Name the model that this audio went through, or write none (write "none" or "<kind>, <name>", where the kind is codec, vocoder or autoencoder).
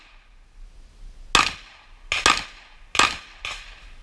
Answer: none